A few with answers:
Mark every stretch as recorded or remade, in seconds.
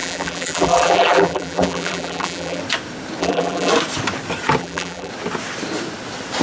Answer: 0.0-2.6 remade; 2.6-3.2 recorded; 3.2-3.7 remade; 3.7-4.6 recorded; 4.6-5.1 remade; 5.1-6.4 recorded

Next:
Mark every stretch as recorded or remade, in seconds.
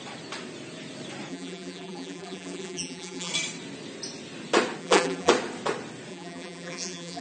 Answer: 0.0-1.3 recorded; 1.3-3.3 remade; 3.3-4.8 recorded; 4.8-5.3 remade; 5.3-6.1 recorded; 6.1-7.2 remade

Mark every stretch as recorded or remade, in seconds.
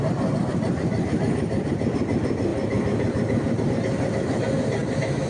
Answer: 0.0-5.3 recorded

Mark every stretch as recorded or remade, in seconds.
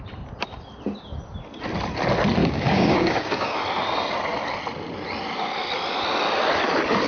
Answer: 0.0-2.4 recorded; 2.4-3.6 remade; 3.6-7.1 recorded